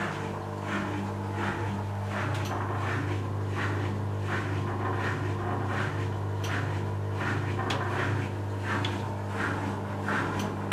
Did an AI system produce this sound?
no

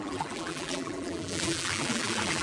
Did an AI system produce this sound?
yes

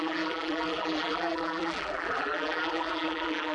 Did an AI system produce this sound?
yes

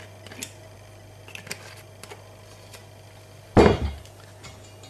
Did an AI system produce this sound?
no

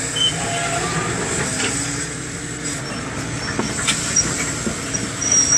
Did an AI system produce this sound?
yes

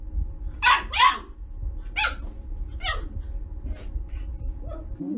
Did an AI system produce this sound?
no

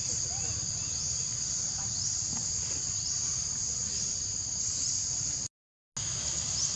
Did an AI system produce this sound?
no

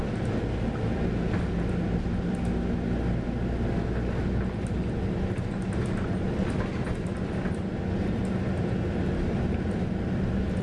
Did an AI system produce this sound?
no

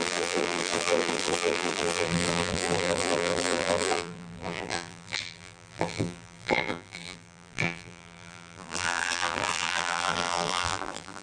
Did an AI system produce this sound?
yes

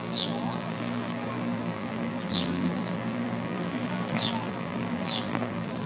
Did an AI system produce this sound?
yes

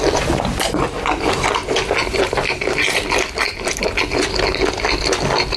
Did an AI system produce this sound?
no